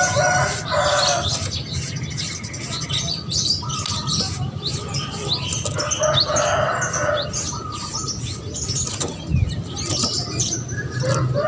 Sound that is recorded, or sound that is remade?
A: recorded